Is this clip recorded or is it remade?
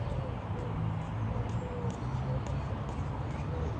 recorded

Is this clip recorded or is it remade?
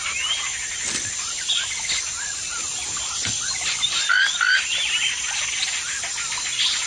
recorded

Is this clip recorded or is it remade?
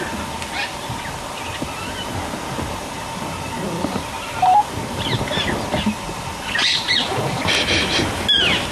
recorded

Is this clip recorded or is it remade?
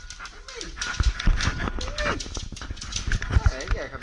recorded